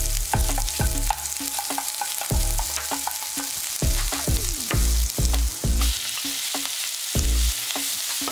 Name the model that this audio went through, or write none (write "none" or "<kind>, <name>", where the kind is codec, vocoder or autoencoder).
none